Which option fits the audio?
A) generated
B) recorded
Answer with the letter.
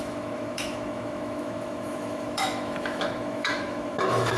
A